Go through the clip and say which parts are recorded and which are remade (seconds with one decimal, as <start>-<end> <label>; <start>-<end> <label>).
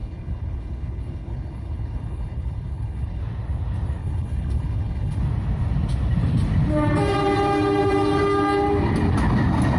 0.0-3.2 remade; 3.2-4.0 recorded; 4.0-5.2 remade; 5.2-9.8 recorded